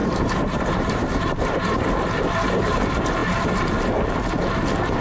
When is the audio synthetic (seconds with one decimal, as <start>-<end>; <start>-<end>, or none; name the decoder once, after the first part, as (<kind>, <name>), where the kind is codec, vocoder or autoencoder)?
0.0-1.8 (vocoder, BigVGAN v2)

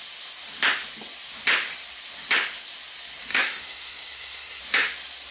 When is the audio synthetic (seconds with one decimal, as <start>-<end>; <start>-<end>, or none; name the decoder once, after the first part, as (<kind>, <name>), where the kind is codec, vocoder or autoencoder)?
3.3-4.6 (codec, SNAC)

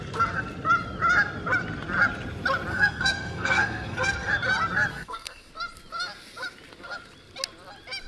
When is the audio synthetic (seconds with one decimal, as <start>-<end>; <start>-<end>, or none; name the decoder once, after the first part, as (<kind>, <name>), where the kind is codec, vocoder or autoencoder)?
2.7-4.3 (codec, SNAC); 4.9-5.5

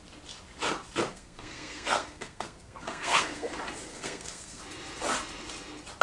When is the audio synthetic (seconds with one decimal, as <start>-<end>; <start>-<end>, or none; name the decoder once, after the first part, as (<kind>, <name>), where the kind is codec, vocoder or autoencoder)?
1.1-3.5 (codec, SNAC); 3.9-4.6

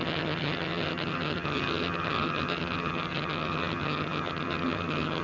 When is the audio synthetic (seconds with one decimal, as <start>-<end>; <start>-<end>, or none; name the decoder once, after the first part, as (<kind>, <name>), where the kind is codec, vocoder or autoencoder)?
0.0-5.2 (vocoder, HiFi-GAN)

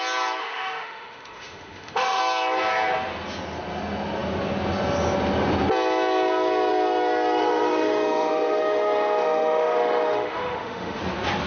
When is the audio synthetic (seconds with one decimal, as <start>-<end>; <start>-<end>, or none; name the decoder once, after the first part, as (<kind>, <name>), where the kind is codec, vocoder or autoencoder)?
0.4-2.2 (autoencoder, DAC-VAE); 7.4-11.0